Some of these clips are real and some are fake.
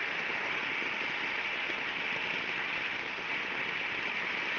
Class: real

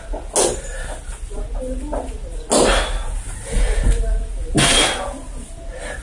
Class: real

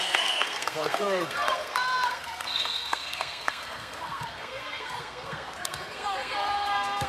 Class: fake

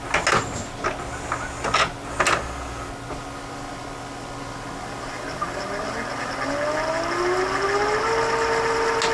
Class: real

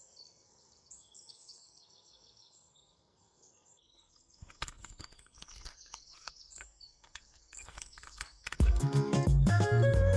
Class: fake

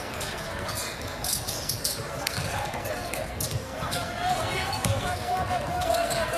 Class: fake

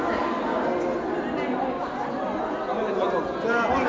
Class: real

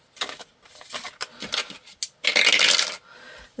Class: real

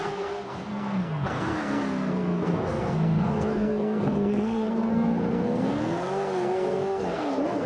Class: fake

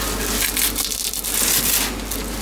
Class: real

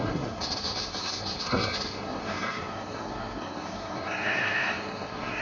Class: fake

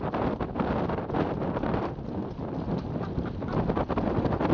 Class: real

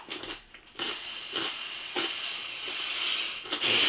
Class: real